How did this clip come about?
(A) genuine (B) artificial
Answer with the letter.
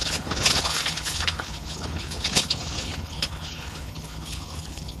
B